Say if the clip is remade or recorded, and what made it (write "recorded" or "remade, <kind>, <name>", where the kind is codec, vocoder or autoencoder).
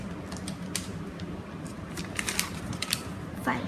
recorded